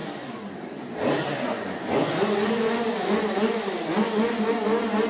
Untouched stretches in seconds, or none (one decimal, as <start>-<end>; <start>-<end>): 0.0-1.3; 4.4-5.1